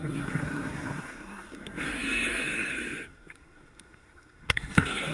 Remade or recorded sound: remade